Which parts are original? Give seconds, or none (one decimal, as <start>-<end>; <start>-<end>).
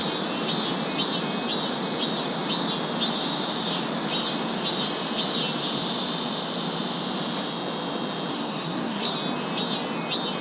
0.0-8.3; 9.1-10.4